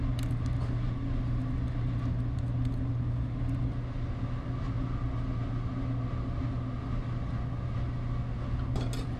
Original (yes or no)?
yes